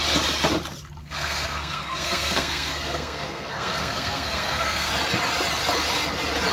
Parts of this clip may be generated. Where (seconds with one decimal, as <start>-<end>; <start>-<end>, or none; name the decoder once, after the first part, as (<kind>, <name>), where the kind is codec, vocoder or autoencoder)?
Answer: 1.0-4.9 (codec, SNAC)